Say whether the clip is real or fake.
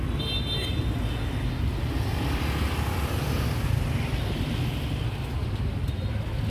real